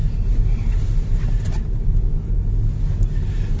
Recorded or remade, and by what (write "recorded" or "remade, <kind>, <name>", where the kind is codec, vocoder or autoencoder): recorded